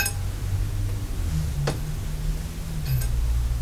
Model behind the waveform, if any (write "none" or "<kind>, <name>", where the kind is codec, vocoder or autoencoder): none